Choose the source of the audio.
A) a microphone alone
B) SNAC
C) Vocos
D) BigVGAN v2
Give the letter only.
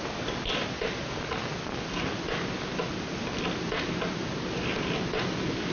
A